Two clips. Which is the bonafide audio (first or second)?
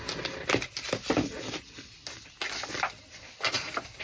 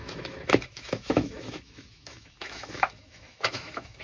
first